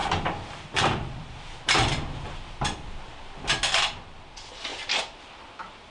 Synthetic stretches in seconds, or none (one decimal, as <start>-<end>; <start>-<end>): 0.0-2.8; 4.7-5.9